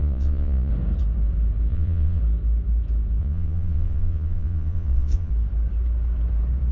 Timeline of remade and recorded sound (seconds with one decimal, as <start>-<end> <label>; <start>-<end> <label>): 0.0-0.7 remade; 0.7-1.7 recorded; 1.7-2.2 remade; 2.2-3.2 recorded; 3.2-5.3 remade; 5.3-6.7 recorded